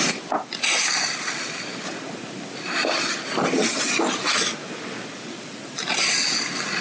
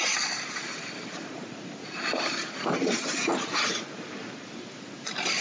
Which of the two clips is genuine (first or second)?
first